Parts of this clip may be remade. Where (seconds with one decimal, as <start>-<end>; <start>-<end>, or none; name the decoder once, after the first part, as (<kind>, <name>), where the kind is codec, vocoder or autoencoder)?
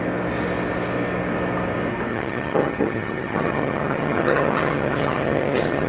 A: 2.1-5.9 (vocoder, HiFi-GAN)